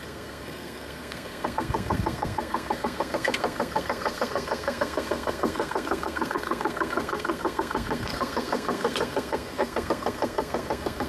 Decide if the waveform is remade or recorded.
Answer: remade